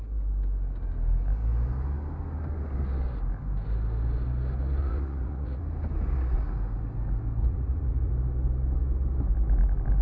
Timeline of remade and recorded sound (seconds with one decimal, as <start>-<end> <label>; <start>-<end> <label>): 0.0-4.8 recorded; 4.8-5.6 remade; 5.6-7.4 recorded; 7.4-8.1 remade; 8.1-10.0 recorded